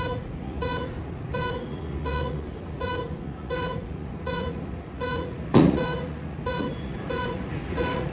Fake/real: fake